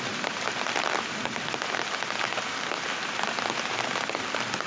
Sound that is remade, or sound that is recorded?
recorded